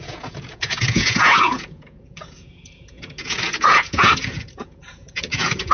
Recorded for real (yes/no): no